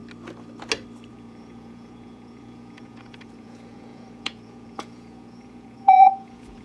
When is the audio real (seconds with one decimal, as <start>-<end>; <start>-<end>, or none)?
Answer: 0.0-1.1